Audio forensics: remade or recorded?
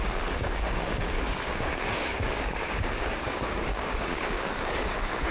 remade